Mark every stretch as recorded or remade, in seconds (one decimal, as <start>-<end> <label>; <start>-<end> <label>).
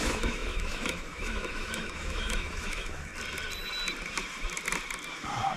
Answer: 0.0-3.1 remade; 3.1-5.6 recorded